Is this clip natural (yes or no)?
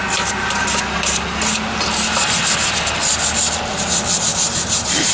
yes